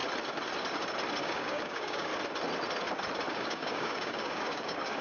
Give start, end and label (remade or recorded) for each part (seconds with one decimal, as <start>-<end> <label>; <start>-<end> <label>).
0.0-1.2 recorded; 1.2-2.1 remade; 2.1-3.3 recorded; 3.3-5.0 remade